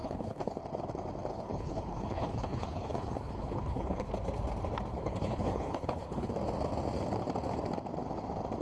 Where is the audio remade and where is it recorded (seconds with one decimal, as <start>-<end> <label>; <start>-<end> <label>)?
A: 0.0-0.6 remade; 0.6-1.3 recorded; 1.3-4.1 remade; 4.1-4.9 recorded; 4.9-6.3 remade; 6.3-8.6 recorded